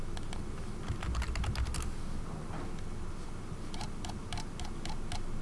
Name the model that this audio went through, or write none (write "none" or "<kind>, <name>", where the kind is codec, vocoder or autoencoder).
none